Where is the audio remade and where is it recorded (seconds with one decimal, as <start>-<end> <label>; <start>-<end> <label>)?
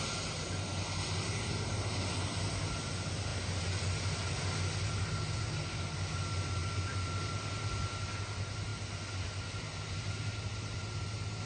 0.0-11.5 recorded